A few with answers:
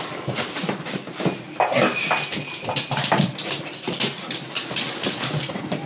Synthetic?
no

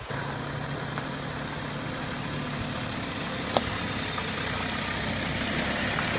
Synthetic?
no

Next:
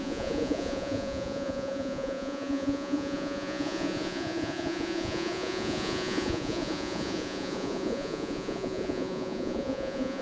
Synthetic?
yes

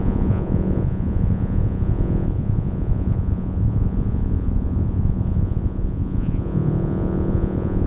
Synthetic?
yes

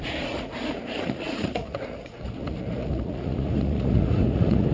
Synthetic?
yes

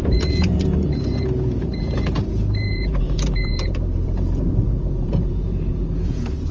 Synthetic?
yes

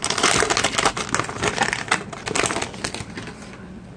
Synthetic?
no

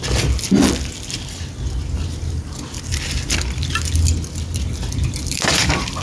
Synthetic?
no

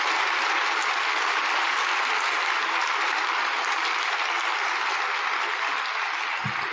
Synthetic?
no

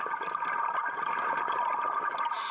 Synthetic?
no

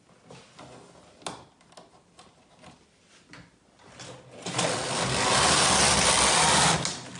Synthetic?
no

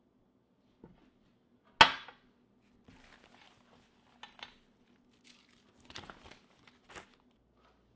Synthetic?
no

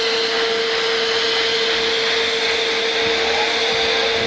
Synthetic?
no